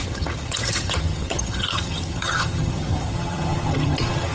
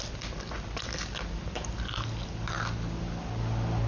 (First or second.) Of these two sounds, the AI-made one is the first